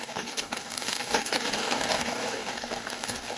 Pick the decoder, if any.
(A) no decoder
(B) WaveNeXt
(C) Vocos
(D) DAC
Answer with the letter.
D